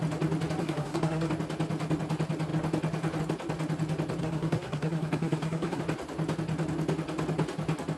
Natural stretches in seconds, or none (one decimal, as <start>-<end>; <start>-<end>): 0.0-0.6; 1.3-4.2; 5.8-8.0